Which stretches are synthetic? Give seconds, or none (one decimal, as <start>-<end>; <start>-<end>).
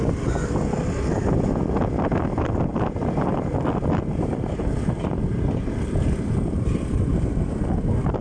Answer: 2.7-7.1